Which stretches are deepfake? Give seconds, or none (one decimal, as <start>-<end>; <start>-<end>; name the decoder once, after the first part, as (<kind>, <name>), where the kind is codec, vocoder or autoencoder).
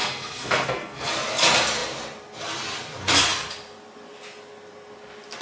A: 0.0-1.1 (codec, SNAC)